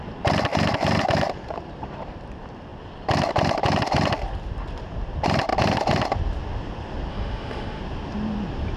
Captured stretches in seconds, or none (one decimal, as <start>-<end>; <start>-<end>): 0.0-7.1; 7.8-8.8